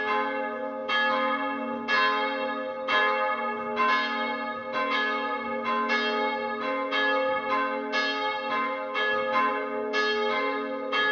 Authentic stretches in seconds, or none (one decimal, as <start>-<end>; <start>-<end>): 0.0-11.1